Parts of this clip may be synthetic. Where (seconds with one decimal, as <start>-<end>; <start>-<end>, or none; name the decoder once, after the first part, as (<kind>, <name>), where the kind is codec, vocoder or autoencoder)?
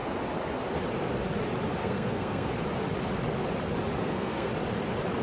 1.8-2.5 (codec, SNAC); 4.0-4.5